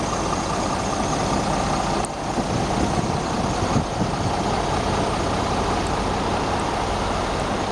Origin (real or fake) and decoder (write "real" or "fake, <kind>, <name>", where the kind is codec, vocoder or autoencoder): real